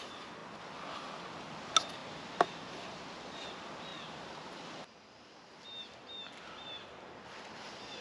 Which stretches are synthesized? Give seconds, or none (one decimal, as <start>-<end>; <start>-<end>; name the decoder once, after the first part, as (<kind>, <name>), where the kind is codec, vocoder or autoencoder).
none